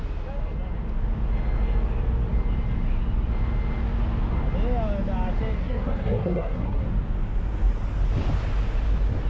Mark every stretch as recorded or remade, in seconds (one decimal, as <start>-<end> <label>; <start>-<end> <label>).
0.0-5.6 recorded; 5.6-6.8 remade; 6.8-9.3 recorded